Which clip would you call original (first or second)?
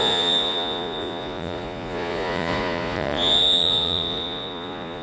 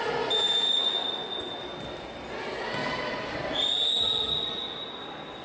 second